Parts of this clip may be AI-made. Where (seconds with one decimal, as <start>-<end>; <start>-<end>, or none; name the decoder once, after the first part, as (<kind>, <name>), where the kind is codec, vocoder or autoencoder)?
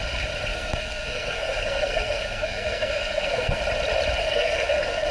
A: 0.5-3.6 (codec, SNAC); 4.2-5.1